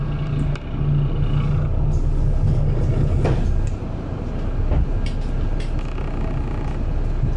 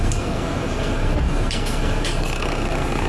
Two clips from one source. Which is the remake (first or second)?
second